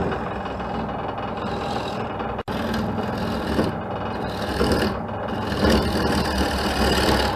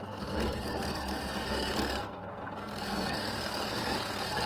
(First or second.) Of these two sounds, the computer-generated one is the second